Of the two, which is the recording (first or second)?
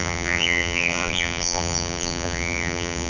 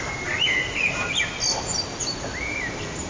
second